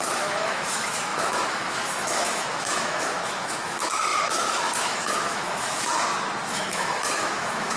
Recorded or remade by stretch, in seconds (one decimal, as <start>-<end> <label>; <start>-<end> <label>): 0.0-5.9 remade; 5.9-6.5 recorded; 6.5-7.8 remade